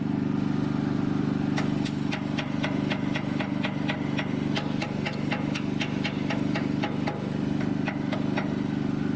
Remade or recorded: recorded